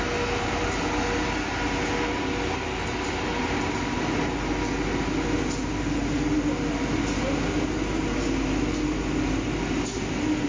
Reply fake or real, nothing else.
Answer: real